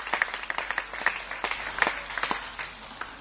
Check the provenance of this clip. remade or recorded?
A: recorded